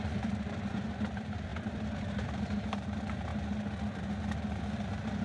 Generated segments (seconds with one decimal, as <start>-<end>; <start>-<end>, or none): 0.0-3.3